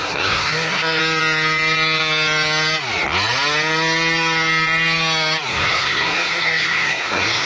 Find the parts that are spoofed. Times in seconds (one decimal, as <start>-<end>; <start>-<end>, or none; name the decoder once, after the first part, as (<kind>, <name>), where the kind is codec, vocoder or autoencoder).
0.0-1.0 (codec, SNAC); 5.5-7.5